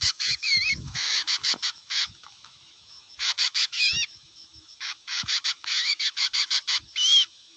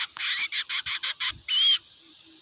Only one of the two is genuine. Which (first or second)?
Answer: second